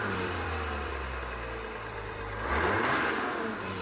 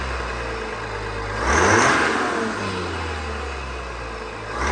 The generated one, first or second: first